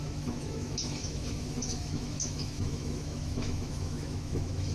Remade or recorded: remade